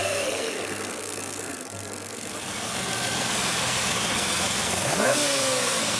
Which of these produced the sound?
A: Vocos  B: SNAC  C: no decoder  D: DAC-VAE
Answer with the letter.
B